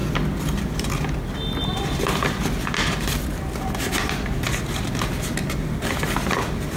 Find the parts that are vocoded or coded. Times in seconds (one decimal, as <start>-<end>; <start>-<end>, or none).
none